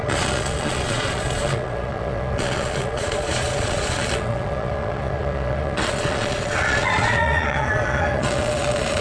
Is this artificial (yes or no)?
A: yes